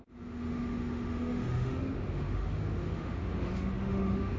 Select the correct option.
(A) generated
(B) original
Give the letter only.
A